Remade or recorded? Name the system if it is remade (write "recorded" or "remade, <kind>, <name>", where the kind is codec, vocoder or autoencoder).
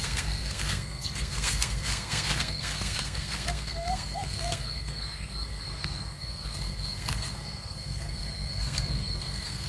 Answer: remade, codec, SNAC